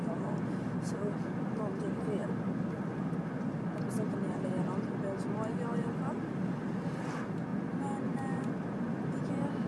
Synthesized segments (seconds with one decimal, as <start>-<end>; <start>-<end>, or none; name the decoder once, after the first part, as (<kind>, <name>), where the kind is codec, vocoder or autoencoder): none